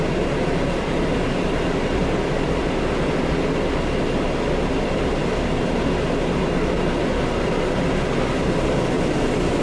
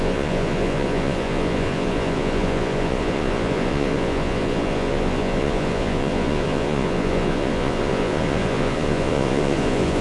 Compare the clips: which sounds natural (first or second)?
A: first